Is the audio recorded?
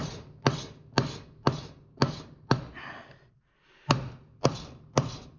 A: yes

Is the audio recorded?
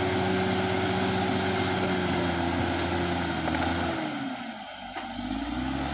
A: yes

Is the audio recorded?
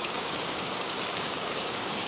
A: no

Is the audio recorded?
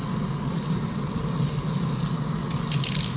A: yes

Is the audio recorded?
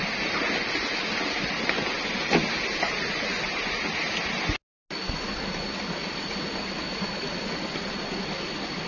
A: yes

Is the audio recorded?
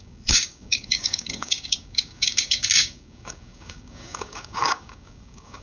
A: no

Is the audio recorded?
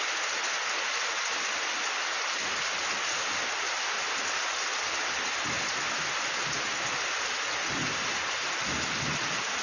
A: yes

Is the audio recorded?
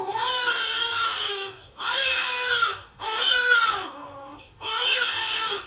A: no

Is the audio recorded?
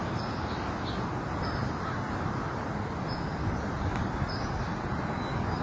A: yes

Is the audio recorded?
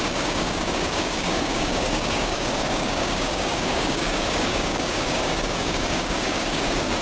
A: no